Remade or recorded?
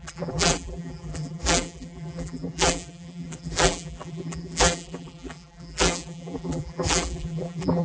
remade